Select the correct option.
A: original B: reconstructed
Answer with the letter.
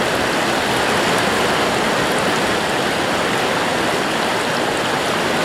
A